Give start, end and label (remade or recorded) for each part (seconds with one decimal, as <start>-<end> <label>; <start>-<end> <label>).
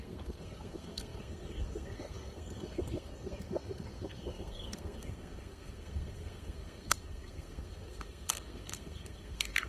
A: 0.0-9.7 remade